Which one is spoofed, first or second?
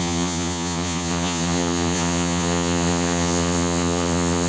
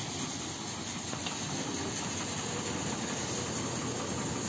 first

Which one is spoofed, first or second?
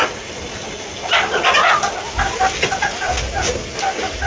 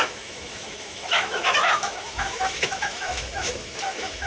second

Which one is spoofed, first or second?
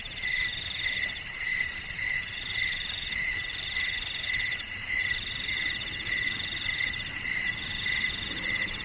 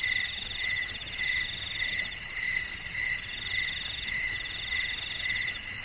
first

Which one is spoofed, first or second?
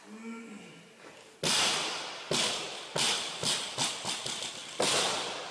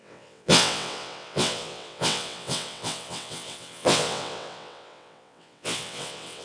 second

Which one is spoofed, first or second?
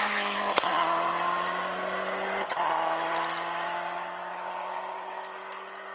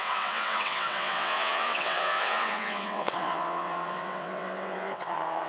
second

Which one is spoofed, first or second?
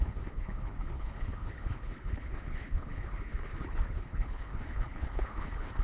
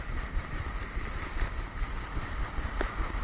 first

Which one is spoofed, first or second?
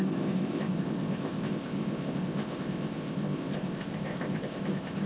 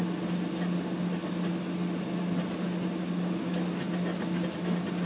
first